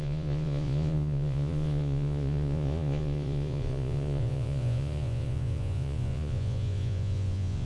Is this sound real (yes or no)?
no